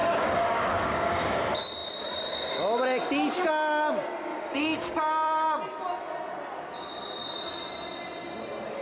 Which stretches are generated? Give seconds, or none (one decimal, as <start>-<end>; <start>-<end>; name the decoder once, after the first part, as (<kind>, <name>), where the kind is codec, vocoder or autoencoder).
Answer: 0.0-1.3 (codec, DAC); 4.3-5.0